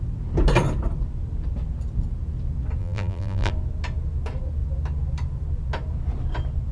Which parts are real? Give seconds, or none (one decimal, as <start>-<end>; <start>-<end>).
0.0-2.8; 3.5-6.7